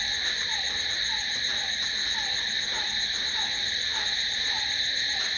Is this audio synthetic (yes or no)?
no